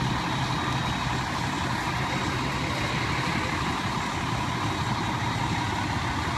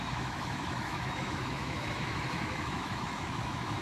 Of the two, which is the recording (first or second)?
first